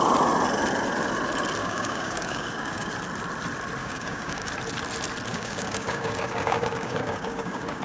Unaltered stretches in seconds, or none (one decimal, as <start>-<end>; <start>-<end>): 0.0-1.6; 2.9-3.8; 4.5-5.3